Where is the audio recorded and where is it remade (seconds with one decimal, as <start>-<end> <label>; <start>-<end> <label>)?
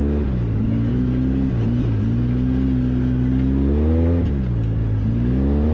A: 0.0-5.7 recorded